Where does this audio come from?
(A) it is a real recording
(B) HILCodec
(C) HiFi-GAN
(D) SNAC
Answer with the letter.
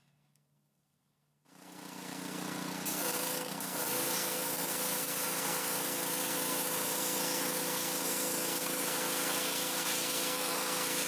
D